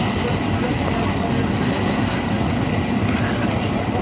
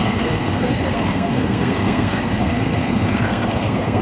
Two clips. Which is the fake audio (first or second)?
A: second